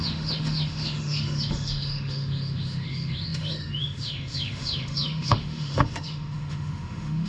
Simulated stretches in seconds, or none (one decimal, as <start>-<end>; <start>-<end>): 0.0-7.3